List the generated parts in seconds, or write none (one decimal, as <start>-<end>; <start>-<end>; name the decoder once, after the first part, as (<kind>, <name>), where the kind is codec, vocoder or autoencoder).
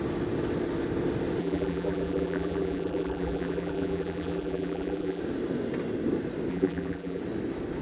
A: 1.4-5.2 (vocoder, BigVGAN v2); 6.5-7.2